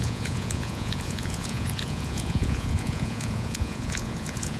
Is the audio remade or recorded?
remade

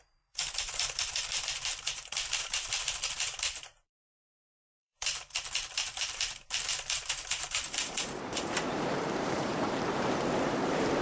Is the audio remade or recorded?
remade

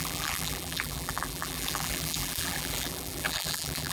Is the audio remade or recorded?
remade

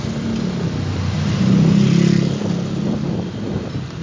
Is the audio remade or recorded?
recorded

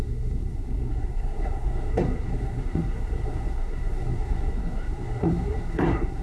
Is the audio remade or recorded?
remade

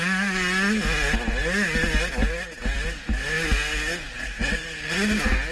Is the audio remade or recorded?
recorded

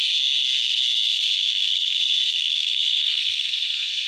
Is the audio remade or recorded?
remade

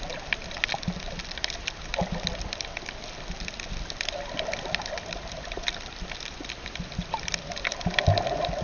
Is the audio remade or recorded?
remade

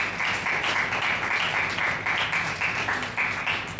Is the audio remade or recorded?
recorded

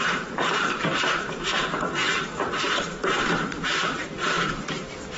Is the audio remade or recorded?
remade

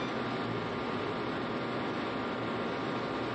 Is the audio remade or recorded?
recorded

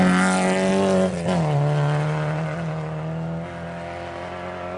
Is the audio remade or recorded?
recorded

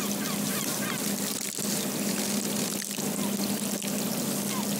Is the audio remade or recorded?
recorded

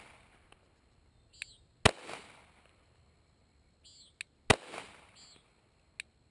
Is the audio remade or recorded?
recorded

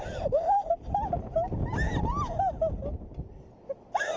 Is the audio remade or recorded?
recorded